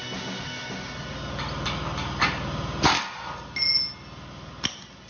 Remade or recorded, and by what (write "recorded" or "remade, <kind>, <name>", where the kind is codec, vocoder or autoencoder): recorded